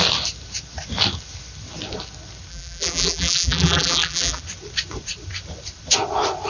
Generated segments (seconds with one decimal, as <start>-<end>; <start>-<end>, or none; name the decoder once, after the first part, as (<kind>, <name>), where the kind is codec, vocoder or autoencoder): 2.5-4.4 (vocoder, BigVGAN v2)